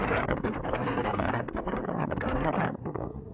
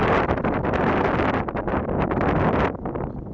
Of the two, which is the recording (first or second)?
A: second